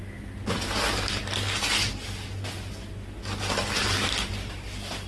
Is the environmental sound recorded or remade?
recorded